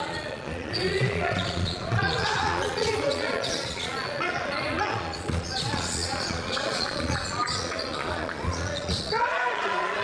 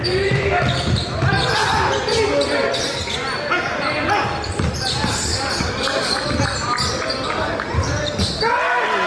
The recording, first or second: second